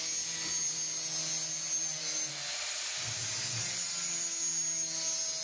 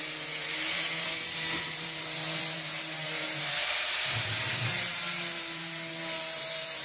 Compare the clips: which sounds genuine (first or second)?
first